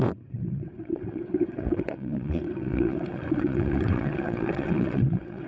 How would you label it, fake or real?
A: fake